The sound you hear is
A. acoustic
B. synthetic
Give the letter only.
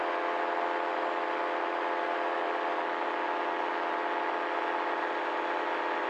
A